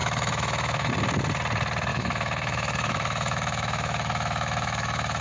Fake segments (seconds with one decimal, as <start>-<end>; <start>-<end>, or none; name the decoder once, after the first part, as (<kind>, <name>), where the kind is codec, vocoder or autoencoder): 0.0-0.9 (autoencoder, DAC-VAE); 1.9-5.2